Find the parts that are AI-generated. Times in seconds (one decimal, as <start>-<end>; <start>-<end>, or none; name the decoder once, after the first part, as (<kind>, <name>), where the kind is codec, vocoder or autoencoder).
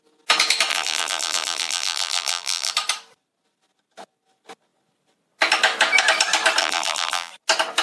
0.7-2.7 (vocoder, BigVGAN v2); 6.6-7.3